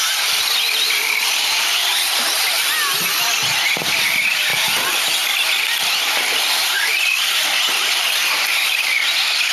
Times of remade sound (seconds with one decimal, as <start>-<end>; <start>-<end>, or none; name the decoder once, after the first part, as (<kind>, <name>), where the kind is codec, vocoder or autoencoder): none